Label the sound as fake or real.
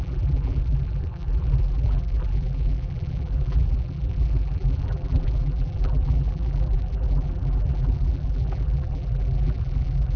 fake